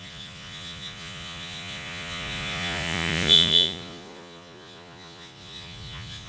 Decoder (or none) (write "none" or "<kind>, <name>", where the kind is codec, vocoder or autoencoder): vocoder, Vocos